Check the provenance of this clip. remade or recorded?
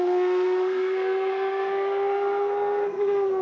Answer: remade